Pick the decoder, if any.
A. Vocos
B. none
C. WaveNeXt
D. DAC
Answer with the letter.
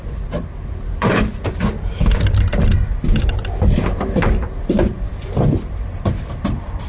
B